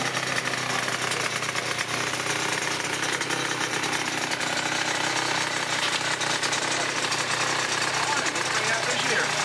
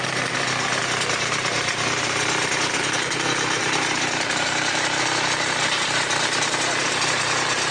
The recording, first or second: first